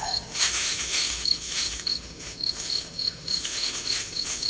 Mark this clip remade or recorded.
remade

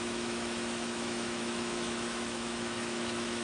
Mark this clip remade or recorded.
remade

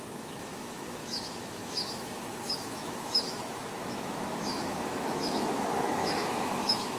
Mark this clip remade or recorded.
remade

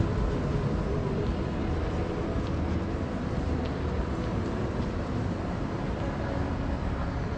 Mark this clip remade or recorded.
recorded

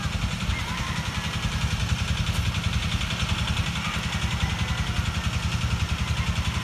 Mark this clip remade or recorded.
recorded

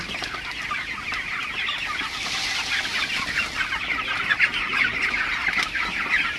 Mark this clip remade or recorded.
recorded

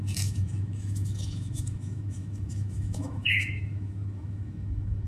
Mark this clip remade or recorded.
remade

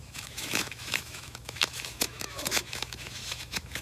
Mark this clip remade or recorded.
remade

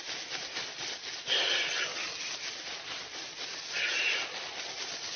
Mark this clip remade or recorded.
recorded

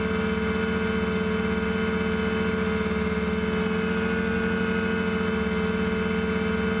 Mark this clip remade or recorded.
recorded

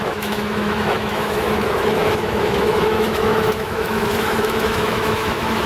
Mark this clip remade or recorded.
remade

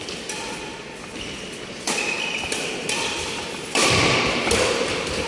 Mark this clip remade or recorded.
recorded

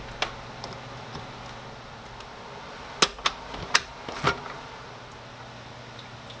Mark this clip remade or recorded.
recorded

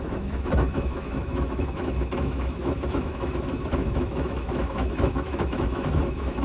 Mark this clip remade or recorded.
remade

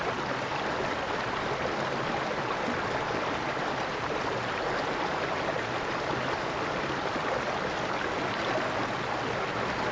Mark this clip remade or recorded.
recorded